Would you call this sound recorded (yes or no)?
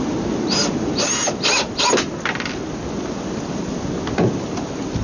yes